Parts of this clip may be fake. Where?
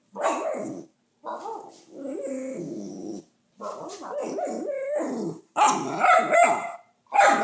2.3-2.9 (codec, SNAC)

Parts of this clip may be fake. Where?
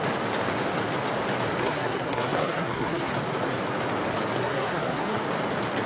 1.6-3.1 (codec, SNAC); 4.4-5.2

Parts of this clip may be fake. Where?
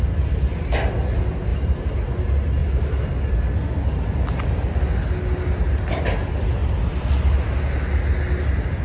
none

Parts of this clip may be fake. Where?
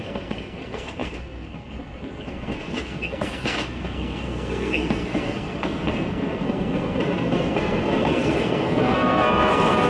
0.0-9.9 (codec, SNAC)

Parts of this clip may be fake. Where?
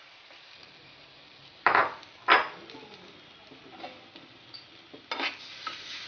0.0-1.8 (vocoder, BigVGAN v2); 5.5-6.1